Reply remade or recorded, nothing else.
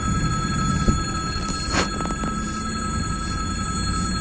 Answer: recorded